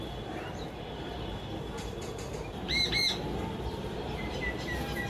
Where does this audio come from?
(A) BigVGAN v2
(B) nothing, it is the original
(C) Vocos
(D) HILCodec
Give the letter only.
A